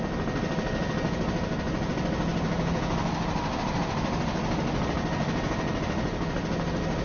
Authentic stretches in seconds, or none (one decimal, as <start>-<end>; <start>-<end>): 0.0-7.0